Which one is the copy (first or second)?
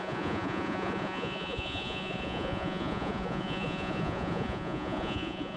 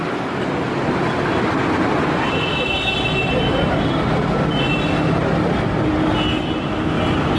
first